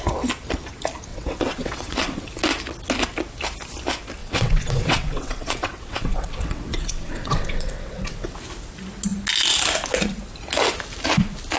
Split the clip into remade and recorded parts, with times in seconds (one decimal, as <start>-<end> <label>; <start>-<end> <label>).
0.0-1.1 recorded; 1.1-2.3 remade; 2.3-4.2 recorded; 4.2-8.4 remade; 8.4-11.6 recorded